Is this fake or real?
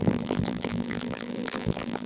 fake